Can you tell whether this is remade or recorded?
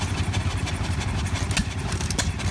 recorded